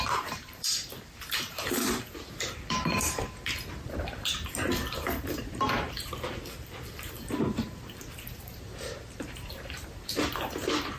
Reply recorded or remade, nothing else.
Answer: remade